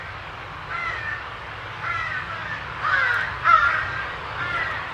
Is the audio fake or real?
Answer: fake